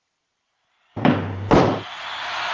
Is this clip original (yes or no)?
no